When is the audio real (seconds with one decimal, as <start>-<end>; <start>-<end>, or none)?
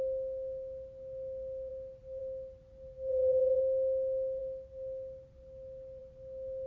0.0-3.1; 3.6-6.7